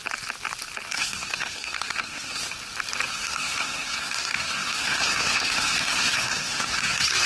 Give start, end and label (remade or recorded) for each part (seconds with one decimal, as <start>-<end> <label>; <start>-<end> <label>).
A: 0.0-0.9 recorded; 0.9-2.4 remade; 2.4-3.1 recorded; 3.1-7.3 remade

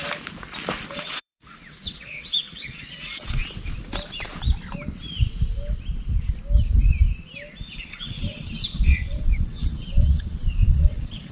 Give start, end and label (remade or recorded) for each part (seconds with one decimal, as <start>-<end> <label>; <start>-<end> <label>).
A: 0.0-0.9 recorded; 0.9-3.4 remade; 3.4-7.7 recorded; 7.7-11.3 remade